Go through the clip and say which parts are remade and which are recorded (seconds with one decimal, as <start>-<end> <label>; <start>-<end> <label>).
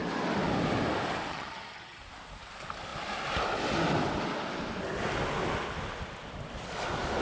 0.0-1.3 recorded; 1.3-2.0 remade; 2.0-7.2 recorded